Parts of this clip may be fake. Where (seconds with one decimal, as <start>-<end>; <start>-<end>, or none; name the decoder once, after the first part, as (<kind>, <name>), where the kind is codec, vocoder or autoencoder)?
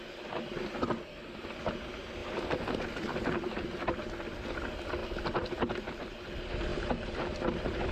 none